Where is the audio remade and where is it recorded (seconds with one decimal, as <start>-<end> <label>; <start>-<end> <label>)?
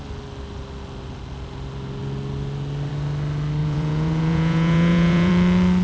0.0-3.6 recorded; 3.6-5.3 remade; 5.3-5.8 recorded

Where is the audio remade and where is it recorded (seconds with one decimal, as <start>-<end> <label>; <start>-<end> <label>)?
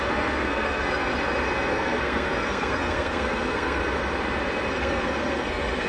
0.0-1.1 remade; 1.1-1.7 recorded; 1.7-3.8 remade; 3.8-4.7 recorded; 4.7-5.9 remade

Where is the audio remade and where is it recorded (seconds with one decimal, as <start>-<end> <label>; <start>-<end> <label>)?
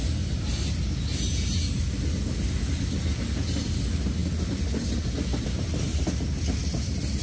0.0-7.2 recorded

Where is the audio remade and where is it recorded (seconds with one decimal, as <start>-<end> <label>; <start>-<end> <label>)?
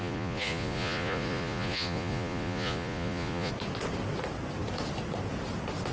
0.0-3.5 remade; 3.5-5.9 recorded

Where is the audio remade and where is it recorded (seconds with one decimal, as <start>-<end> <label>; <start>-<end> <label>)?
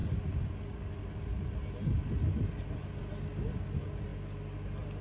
0.0-5.0 recorded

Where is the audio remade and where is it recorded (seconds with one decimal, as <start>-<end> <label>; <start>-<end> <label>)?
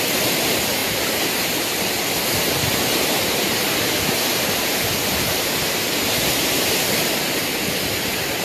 0.0-0.8 recorded; 0.8-1.6 remade; 1.6-2.6 recorded; 2.6-7.2 remade; 7.2-8.4 recorded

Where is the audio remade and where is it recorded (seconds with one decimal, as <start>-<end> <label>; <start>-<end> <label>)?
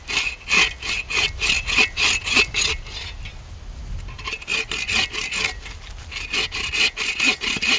0.0-7.8 recorded